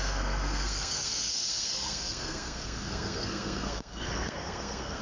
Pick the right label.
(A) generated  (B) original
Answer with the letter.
A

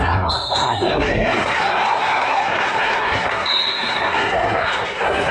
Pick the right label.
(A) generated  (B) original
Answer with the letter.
A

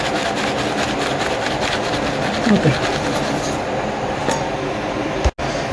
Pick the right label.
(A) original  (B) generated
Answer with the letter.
A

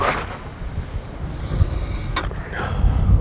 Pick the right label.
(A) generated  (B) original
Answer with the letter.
B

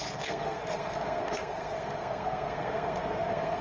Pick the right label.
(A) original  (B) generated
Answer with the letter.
B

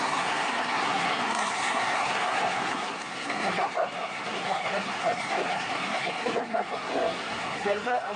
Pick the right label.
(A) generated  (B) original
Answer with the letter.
A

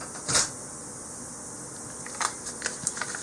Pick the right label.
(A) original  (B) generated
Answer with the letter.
A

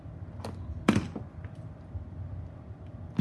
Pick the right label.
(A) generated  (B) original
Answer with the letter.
B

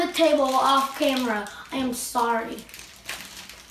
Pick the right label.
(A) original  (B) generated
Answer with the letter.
A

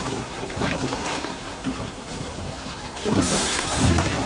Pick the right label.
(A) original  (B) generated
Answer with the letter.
B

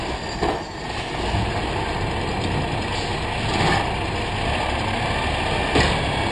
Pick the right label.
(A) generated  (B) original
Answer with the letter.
B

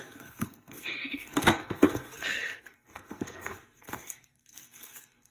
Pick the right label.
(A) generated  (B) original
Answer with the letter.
A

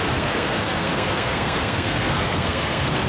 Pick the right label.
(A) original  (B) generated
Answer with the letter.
B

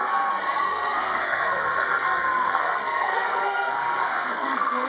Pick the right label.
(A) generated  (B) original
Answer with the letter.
A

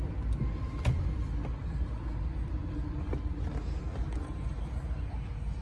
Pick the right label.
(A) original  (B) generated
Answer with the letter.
A